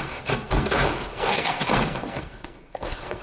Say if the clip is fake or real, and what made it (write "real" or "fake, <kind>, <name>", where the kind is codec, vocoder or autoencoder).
fake, codec, SNAC